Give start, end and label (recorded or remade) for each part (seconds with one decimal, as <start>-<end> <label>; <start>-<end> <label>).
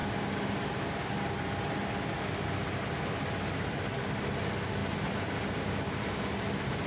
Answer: 0.0-6.9 recorded